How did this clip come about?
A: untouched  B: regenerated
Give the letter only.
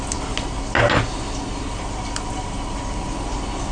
A